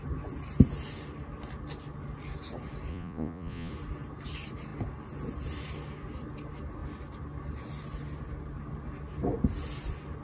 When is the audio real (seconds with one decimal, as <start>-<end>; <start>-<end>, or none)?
0.0-2.9; 3.7-10.2